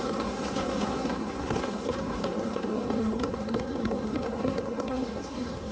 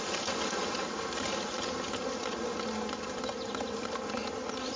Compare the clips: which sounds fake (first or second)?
first